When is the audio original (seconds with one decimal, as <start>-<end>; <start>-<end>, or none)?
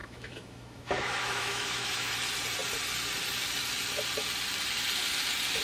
2.1-5.6